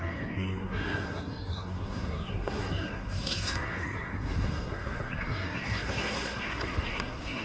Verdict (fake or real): fake